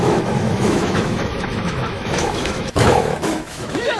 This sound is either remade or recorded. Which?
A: remade